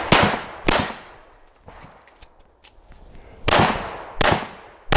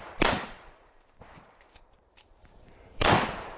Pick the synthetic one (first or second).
second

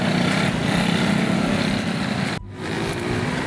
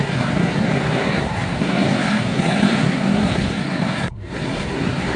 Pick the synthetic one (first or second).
second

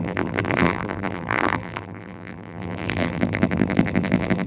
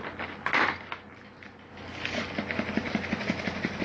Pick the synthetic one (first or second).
first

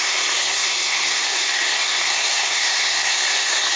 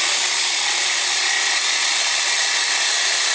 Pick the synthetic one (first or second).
first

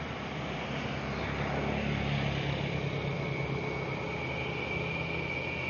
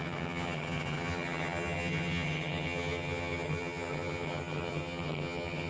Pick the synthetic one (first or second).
second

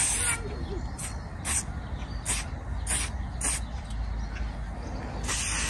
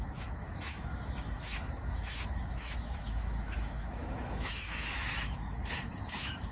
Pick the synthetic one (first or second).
second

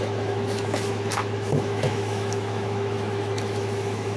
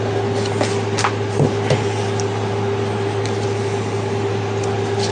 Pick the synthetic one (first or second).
first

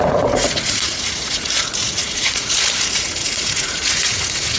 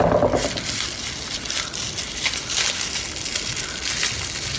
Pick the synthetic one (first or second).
first